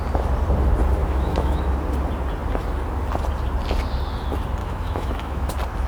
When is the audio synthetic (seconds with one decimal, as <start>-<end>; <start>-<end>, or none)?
1.0-1.7; 4.6-5.5